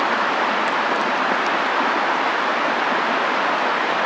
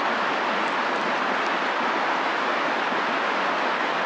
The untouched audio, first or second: second